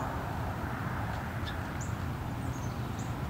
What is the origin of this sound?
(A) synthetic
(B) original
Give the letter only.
A